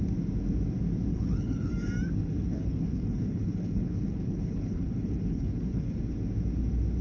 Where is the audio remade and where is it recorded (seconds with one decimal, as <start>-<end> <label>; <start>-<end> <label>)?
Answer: 0.0-1.1 recorded; 1.1-1.7 remade; 1.7-2.2 recorded; 2.2-6.0 remade; 6.0-7.0 recorded